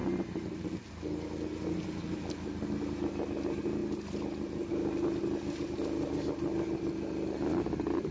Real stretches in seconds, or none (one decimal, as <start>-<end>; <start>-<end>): 0.0-8.1